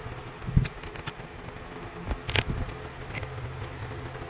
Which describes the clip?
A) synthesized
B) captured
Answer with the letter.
B